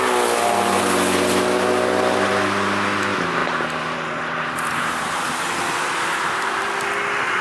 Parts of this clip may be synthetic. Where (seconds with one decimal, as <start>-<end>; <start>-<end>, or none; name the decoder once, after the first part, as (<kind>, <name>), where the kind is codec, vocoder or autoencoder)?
3.4-5.5 (vocoder, BigVGAN v2)

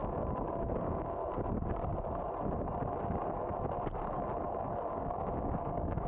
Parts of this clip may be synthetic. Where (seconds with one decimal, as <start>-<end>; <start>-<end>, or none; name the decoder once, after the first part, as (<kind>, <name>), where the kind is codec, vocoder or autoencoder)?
0.0-1.2 (codec, DAC); 4.7-6.1

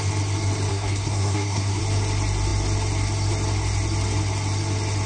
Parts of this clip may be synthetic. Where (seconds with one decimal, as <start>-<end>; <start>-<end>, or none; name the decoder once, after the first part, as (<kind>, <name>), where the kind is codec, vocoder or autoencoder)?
0.7-1.8 (codec, SNAC)

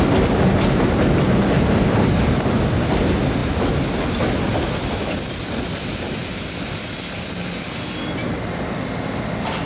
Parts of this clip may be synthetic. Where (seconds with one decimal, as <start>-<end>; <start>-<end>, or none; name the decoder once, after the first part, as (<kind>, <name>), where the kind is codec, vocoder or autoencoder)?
none